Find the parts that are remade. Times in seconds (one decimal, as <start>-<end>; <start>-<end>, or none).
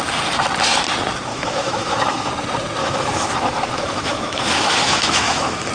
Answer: 1.3-2.3; 2.8-5.7